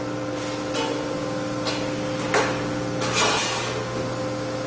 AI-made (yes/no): no